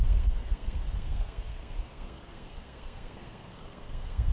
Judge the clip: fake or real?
fake